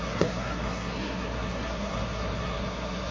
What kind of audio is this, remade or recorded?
remade